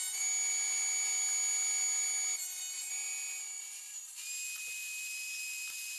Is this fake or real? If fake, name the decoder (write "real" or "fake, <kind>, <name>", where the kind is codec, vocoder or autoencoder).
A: real